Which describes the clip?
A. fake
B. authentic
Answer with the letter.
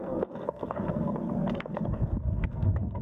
A